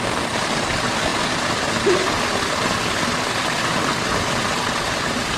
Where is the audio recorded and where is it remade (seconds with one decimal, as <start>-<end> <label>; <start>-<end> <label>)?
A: 0.0-5.4 recorded